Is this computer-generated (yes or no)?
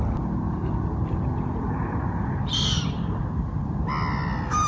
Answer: yes